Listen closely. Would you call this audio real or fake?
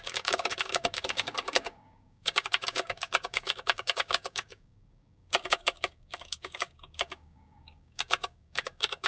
fake